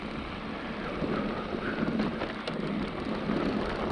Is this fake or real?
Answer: real